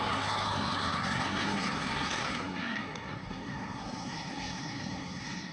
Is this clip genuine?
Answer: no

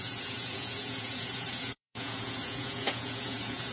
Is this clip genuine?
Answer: no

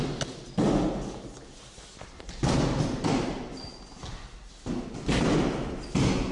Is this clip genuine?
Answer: yes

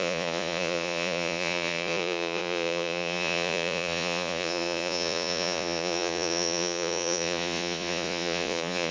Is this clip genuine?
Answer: no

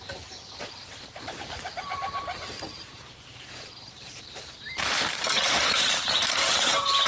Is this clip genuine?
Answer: no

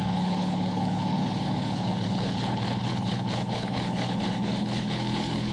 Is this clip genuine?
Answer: no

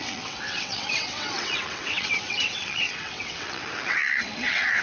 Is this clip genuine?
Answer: no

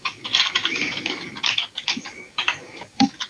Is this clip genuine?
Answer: no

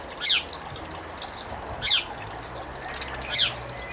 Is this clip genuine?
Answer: yes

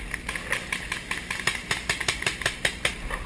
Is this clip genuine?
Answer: yes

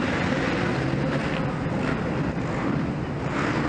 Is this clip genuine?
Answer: yes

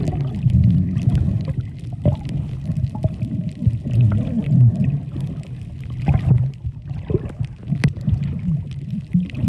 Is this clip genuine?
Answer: yes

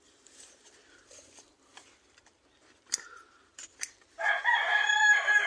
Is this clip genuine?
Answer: no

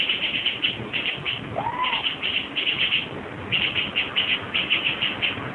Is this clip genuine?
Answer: yes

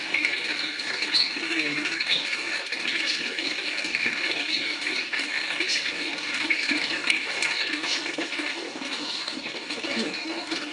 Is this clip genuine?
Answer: no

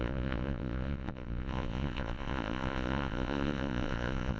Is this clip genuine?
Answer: no